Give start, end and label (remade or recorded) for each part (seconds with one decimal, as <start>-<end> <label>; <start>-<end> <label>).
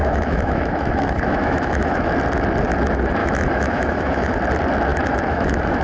0.0-2.1 remade; 2.1-3.2 recorded; 3.2-4.3 remade; 4.3-4.9 recorded; 4.9-5.8 remade